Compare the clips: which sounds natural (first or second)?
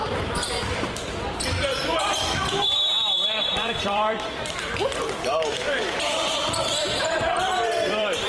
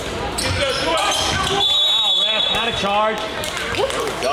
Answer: second